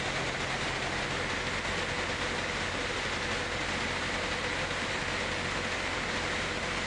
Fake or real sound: real